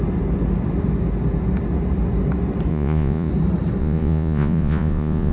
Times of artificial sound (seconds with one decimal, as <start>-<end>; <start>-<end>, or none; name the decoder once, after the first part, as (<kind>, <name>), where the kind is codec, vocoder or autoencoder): 2.7-3.3 (vocoder, Vocos); 3.8-5.3